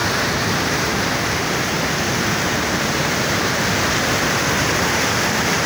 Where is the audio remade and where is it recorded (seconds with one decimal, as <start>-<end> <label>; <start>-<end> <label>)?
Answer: 0.0-3.4 remade; 3.4-5.7 recorded